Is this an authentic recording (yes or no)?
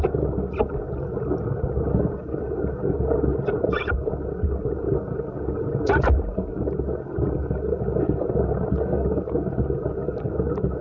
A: yes